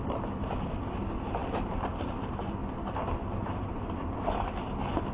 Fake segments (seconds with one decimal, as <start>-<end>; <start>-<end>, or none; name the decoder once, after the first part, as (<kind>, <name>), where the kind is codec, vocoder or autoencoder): 0.0-0.5 (vocoder, BigVGAN v2); 1.4-2.3